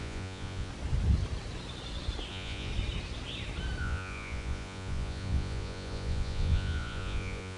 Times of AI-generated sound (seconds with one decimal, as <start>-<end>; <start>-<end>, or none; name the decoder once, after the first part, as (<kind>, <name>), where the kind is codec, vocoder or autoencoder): 0.0-0.7 (vocoder, Vocos); 2.3-2.7; 3.8-7.6